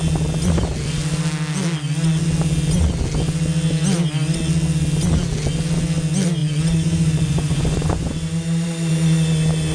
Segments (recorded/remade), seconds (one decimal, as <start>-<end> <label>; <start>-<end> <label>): 0.0-6.4 recorded; 6.4-8.9 remade; 8.9-9.7 recorded

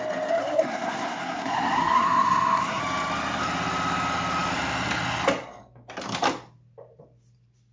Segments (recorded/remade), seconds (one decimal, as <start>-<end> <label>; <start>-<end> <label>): 0.0-0.4 recorded; 0.4-2.8 remade; 2.8-7.7 recorded

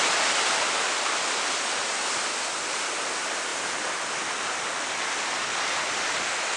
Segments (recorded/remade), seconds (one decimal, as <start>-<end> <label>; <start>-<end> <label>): 0.0-3.5 recorded; 3.5-5.7 remade; 5.7-6.6 recorded

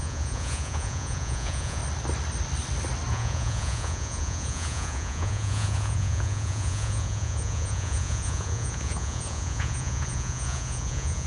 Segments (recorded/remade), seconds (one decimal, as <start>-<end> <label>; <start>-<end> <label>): 0.0-1.8 remade; 1.8-3.1 recorded; 3.1-11.3 remade

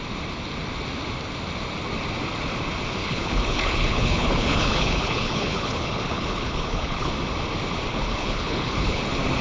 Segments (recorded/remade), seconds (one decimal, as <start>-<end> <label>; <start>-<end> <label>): 0.0-3.0 recorded; 3.0-7.1 remade; 7.1-7.9 recorded; 7.9-9.0 remade; 9.0-9.4 recorded

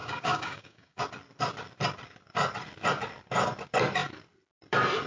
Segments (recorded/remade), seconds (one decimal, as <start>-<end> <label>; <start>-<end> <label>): 0.0-1.0 remade; 1.0-5.1 recorded